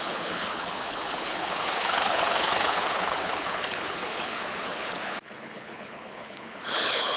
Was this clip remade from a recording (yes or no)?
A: yes